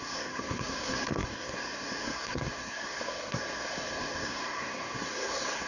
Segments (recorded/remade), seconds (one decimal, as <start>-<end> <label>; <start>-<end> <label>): 0.0-5.7 remade